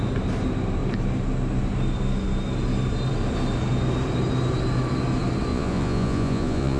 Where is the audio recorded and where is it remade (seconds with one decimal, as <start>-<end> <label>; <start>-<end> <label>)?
0.0-5.5 recorded; 5.5-6.8 remade